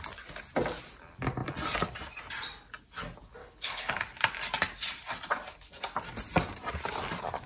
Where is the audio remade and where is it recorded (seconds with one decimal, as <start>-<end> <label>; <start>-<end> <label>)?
0.0-3.4 recorded; 3.4-4.0 remade; 4.0-7.5 recorded